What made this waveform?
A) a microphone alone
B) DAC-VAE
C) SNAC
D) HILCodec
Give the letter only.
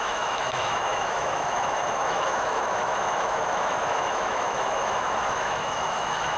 B